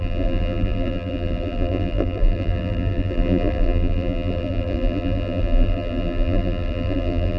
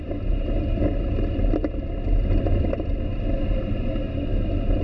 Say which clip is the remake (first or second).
first